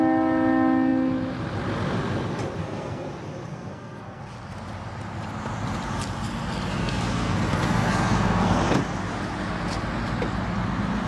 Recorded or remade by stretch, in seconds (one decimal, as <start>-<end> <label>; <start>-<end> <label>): 0.0-2.6 recorded; 2.6-3.1 remade; 3.1-3.5 recorded; 3.5-4.2 remade; 4.2-6.8 recorded; 6.8-8.6 remade; 8.6-11.1 recorded